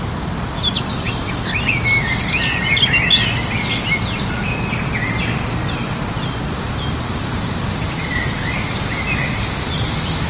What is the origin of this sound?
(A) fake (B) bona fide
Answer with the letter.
B